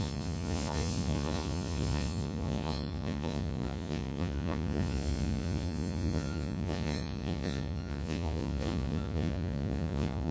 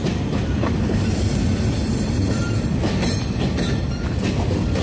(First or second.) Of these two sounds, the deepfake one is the first